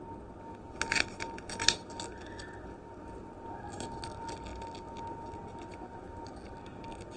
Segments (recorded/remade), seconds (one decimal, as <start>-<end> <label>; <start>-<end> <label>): 0.0-7.2 recorded